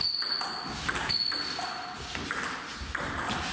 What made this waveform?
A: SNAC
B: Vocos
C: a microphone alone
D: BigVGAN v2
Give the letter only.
C